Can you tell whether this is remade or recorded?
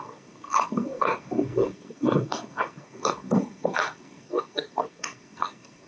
remade